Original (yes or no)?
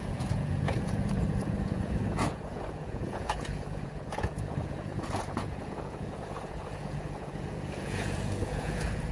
no